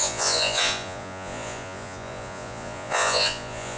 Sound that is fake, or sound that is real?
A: fake